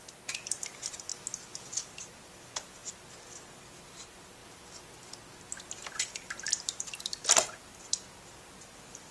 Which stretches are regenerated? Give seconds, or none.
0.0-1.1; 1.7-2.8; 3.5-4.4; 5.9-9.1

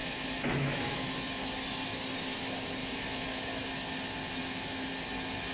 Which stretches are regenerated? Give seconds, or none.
0.0-1.1; 2.8-3.7; 4.4-4.9

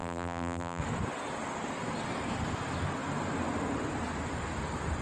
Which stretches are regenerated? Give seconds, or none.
0.0-0.8

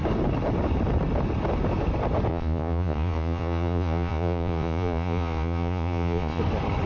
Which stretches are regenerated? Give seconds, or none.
2.3-6.4

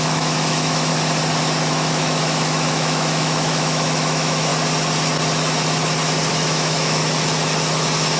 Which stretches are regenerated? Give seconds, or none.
0.0-0.9; 1.7-4.5; 6.3-7.0

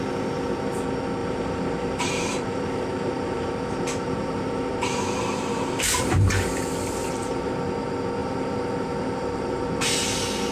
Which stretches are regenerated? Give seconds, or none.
1.2-6.3; 7.0-7.5; 8.2-9.7

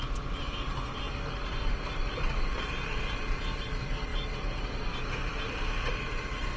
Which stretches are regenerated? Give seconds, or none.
none